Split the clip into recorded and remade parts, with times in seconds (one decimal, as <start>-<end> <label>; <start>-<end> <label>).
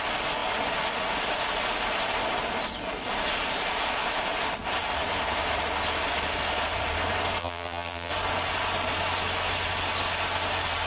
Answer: 0.0-7.4 recorded; 7.4-8.1 remade; 8.1-10.9 recorded